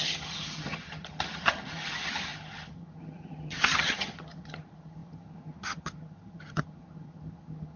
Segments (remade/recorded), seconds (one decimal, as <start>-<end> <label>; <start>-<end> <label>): 0.0-7.8 remade